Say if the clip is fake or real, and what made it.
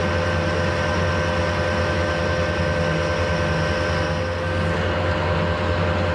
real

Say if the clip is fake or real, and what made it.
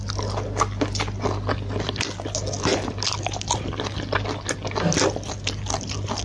real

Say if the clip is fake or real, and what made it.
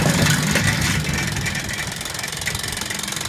real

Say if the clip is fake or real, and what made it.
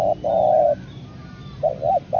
real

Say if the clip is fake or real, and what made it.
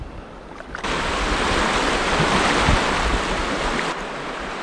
real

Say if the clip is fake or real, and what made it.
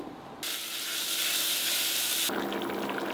real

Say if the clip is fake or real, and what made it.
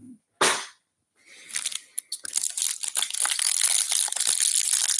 real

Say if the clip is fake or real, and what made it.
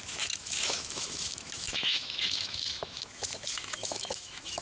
fake, autoencoder, DAC-VAE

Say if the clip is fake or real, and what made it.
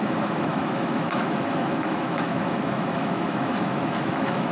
fake, autoencoder, DAC-VAE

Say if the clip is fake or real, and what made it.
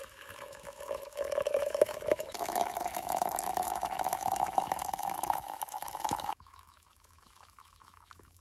fake, autoencoder, DAC-VAE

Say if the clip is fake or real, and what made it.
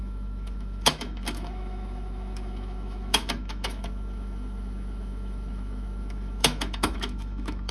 fake, autoencoder, DAC-VAE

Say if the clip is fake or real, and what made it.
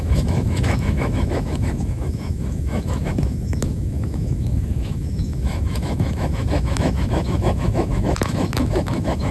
fake, autoencoder, DAC-VAE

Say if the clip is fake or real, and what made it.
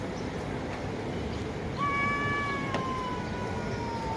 real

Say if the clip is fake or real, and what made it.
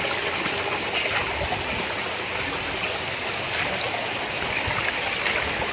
real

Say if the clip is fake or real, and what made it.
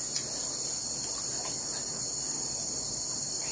real